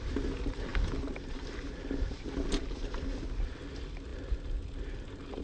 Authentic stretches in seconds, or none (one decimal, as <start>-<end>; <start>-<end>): 0.0-5.4